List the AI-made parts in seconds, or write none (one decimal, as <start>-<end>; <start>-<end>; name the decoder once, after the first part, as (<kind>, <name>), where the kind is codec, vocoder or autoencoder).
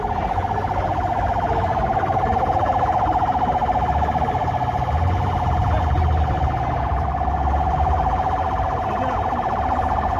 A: none